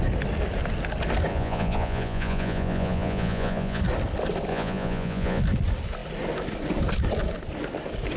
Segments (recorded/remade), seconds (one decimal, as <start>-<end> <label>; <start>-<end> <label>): 0.0-1.3 recorded; 1.3-3.8 remade; 3.8-4.5 recorded; 4.5-5.4 remade; 5.4-8.2 recorded